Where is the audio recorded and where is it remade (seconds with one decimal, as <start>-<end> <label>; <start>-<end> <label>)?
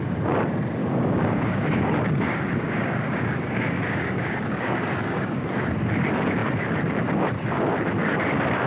0.0-0.8 recorded; 0.8-5.7 remade; 5.7-8.7 recorded